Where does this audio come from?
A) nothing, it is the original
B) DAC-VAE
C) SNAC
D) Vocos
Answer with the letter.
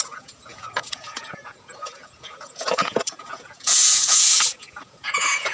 D